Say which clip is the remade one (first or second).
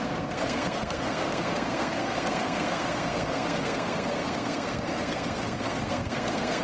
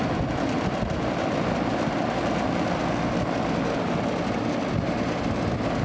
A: first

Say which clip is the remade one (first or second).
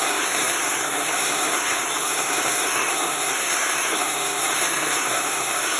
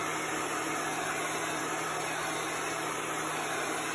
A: first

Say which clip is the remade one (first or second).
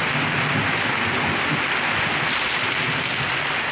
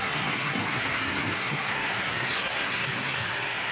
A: second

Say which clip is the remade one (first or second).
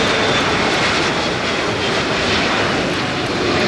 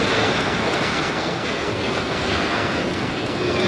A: second